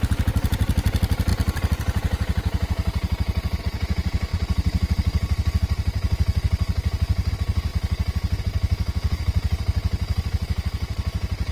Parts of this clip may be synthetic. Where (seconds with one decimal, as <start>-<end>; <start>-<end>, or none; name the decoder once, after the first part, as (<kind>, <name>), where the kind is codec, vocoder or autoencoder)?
none